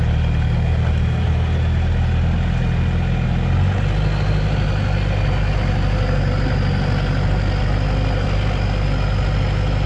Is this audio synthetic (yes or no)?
no